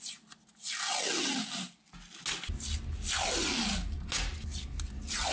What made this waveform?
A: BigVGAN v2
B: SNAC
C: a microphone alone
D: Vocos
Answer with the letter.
C